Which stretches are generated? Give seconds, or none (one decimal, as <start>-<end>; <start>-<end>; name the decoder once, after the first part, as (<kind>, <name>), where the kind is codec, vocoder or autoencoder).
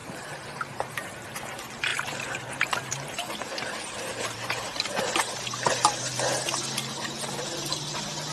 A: 0.0-1.3 (vocoder, BigVGAN v2); 1.9-5.0; 6.1-6.6